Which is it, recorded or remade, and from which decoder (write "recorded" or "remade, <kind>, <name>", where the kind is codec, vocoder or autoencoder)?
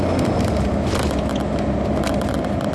recorded